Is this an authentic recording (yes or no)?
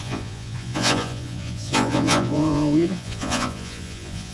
no